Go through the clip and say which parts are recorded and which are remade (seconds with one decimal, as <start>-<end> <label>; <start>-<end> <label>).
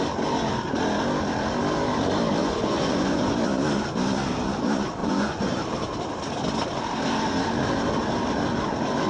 0.0-2.4 recorded; 2.4-3.3 remade; 3.3-5.0 recorded; 5.0-5.5 remade; 5.5-9.1 recorded